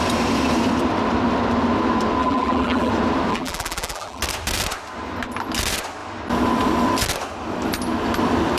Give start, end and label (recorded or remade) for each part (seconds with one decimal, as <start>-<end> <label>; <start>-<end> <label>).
0.0-2.2 recorded; 2.2-2.9 remade; 2.9-3.3 recorded; 3.3-4.2 remade; 4.2-8.6 recorded